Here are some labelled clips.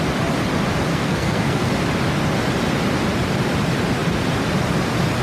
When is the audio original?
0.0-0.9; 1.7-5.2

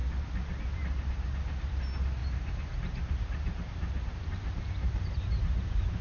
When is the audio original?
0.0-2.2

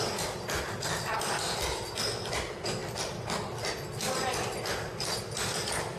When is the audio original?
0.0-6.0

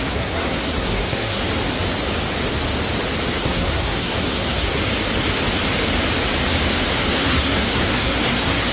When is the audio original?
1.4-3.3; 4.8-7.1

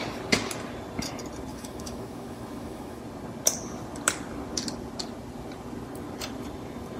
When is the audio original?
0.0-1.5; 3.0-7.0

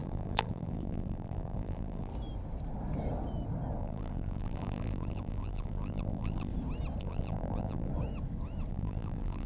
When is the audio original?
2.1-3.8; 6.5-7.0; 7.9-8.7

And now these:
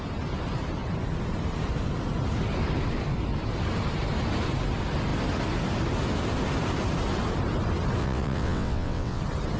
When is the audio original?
0.0-8.0; 9.2-9.6